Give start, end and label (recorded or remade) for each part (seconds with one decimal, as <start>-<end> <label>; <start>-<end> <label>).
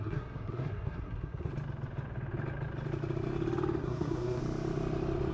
0.0-1.5 remade; 1.5-3.8 recorded; 3.8-4.4 remade; 4.4-5.3 recorded